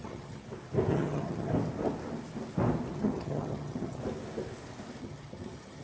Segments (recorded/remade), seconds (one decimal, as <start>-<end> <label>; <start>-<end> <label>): 0.0-0.4 remade; 0.4-0.9 recorded; 0.9-1.5 remade; 1.5-2.9 recorded; 2.9-4.0 remade; 4.0-5.0 recorded; 5.0-5.8 remade